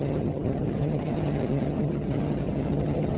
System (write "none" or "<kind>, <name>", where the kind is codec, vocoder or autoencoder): vocoder, HiFi-GAN